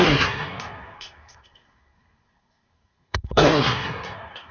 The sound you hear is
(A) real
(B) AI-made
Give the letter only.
B